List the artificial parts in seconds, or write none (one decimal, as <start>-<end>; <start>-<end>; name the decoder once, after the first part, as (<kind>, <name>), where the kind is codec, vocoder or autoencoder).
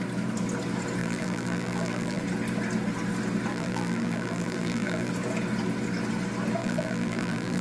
1.0-2.2 (vocoder, BigVGAN v2); 3.5-5.1; 6.6-7.6